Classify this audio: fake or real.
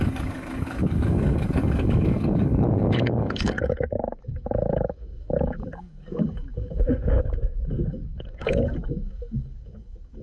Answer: fake